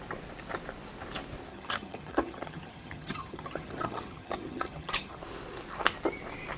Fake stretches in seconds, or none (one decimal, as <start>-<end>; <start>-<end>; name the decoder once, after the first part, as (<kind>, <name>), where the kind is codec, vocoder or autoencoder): 1.5-5.2 (vocoder, HiFi-GAN)